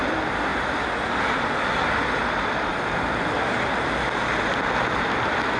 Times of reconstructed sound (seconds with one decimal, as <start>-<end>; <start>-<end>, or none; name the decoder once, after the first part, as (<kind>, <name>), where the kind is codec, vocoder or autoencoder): none